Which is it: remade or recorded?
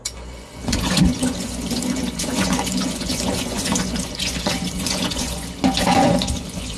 remade